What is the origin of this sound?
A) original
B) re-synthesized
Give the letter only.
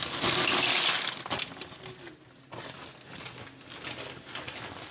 A